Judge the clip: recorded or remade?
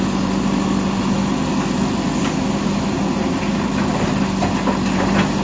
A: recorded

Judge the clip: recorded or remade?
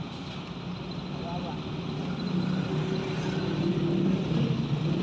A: recorded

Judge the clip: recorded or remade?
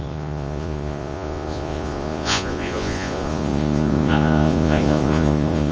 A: remade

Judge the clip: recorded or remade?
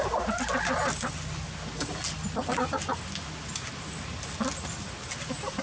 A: recorded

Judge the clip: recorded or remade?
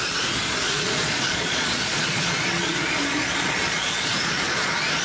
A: remade